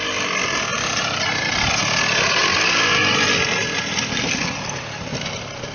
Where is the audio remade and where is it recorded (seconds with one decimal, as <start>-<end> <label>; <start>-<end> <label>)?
0.0-0.7 recorded; 0.7-1.7 remade; 1.7-5.7 recorded